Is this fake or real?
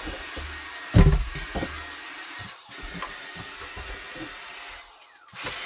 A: real